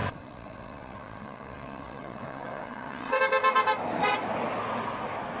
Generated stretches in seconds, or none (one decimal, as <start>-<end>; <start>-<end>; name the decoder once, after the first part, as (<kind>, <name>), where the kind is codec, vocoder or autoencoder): 0.0-3.2 (vocoder, WaveNeXt)